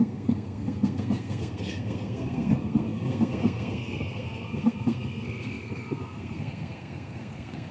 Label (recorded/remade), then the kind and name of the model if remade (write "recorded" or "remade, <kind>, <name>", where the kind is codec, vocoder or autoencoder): remade, codec, SNAC